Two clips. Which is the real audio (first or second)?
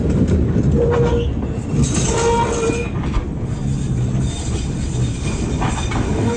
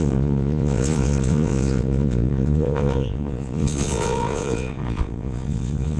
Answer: first